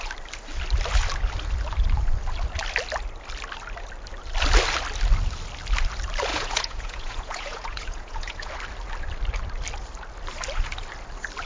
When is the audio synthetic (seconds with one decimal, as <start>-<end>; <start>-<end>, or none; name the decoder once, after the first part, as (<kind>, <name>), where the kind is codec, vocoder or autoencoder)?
6.3-8.5 (vocoder, Vocos)